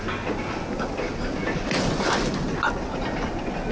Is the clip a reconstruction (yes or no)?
no